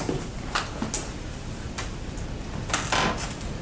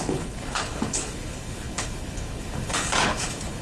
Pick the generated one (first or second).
second